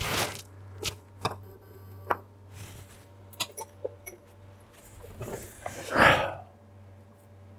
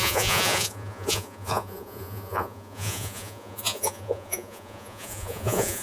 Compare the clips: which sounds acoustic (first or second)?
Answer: first